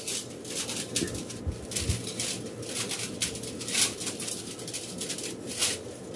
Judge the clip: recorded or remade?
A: recorded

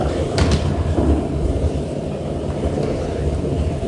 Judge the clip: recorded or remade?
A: remade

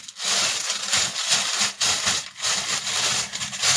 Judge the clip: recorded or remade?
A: recorded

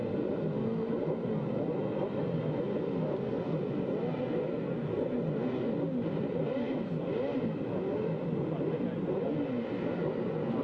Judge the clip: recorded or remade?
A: recorded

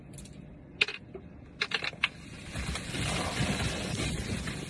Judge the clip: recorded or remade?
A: recorded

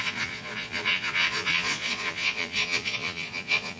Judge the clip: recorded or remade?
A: remade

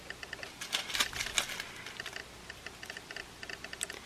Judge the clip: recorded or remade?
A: recorded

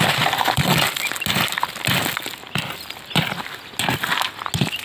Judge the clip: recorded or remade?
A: recorded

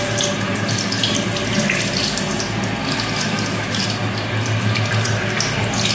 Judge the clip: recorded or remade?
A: recorded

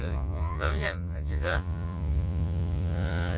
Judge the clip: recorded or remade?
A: remade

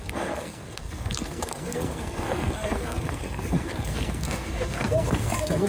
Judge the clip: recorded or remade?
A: remade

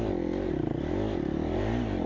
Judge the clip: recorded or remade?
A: recorded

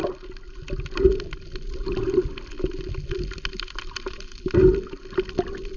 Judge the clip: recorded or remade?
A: recorded